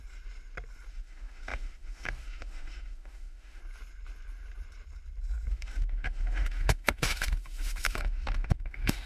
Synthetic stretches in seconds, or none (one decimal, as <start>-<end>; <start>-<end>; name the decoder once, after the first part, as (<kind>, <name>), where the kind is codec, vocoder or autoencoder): 0.9-3.6 (autoencoder, DAC-VAE); 5.5-9.1

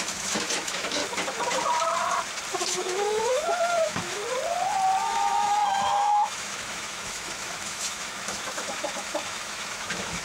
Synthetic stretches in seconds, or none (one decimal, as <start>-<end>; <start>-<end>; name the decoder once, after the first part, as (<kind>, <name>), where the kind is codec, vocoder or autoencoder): 0.0-1.0 (autoencoder, DAC-VAE); 2.6-4.2; 5.0-10.2

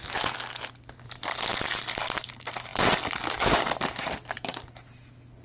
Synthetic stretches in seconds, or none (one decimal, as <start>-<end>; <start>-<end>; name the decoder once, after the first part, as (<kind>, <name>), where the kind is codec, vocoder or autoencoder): none

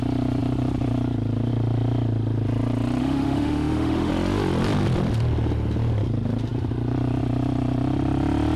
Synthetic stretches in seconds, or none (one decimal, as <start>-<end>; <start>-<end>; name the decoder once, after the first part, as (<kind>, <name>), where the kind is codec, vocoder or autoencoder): 3.0-4.1 (autoencoder, DAC-VAE)

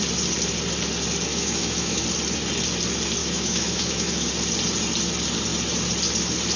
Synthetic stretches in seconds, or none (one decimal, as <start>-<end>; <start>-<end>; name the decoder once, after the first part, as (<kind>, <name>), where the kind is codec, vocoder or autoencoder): 1.3-2.0 (autoencoder, DAC-VAE); 3.2-4.3

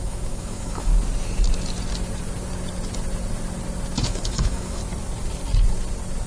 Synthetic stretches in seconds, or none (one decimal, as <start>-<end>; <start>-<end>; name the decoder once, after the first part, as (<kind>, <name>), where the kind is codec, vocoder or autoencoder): 0.0-0.9 (autoencoder, DAC-VAE); 4.0-4.8

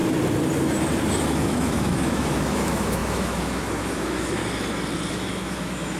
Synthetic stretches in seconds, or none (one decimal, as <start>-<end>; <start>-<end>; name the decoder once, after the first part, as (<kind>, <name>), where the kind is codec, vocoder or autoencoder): 1.2-4.4 (autoencoder, DAC-VAE); 5.1-6.0